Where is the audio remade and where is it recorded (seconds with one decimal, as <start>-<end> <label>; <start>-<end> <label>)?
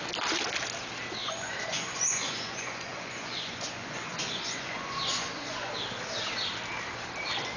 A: 0.0-1.2 recorded; 1.2-5.7 remade; 5.7-7.6 recorded